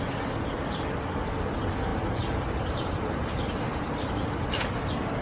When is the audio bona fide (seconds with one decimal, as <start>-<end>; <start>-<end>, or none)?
0.0-5.2